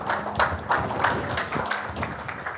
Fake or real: real